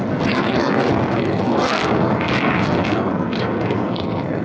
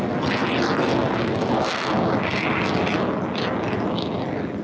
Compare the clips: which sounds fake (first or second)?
first